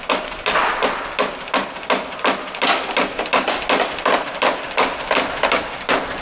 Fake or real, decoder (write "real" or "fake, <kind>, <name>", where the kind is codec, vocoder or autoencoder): real